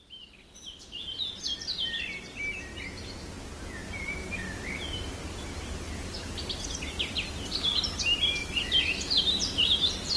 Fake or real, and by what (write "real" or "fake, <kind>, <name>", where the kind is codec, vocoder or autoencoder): real